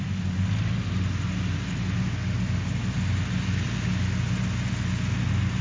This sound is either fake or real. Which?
real